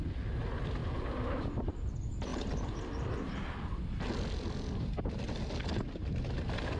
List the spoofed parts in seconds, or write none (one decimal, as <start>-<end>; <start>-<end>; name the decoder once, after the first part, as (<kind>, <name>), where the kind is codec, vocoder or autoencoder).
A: none